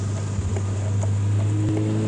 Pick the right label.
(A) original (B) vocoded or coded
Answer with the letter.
A